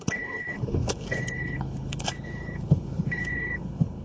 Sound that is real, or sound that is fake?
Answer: fake